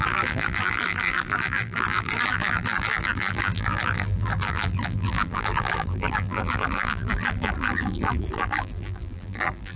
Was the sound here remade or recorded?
remade